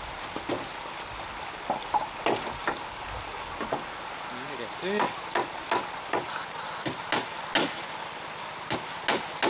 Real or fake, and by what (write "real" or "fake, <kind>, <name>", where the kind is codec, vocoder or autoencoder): real